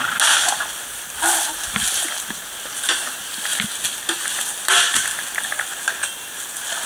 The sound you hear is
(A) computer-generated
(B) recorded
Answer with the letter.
B